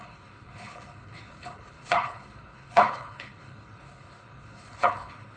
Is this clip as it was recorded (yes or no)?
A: no